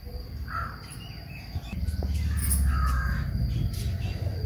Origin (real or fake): real